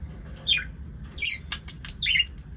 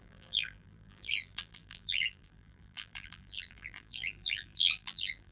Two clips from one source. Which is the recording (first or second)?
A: first